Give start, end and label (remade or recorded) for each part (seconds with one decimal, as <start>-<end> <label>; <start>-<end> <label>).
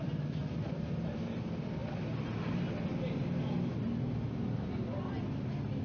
0.0-5.8 recorded